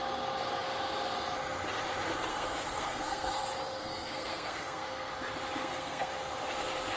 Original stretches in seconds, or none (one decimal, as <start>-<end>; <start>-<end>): 0.0-2.3; 3.4-3.8; 5.1-5.6; 6.1-7.0